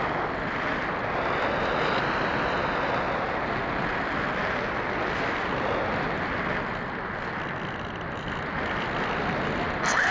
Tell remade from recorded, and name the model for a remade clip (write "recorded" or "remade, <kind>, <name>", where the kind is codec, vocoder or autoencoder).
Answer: recorded